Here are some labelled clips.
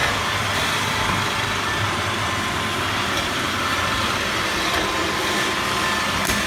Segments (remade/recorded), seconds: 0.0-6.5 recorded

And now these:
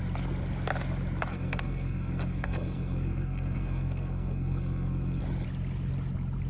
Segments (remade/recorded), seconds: 0.0-1.3 recorded; 1.3-5.2 remade; 5.2-6.5 recorded

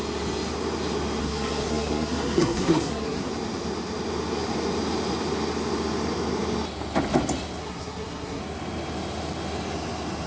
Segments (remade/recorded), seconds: 0.0-1.2 recorded; 1.2-3.3 remade; 3.3-7.6 recorded; 7.6-8.4 remade; 8.4-10.3 recorded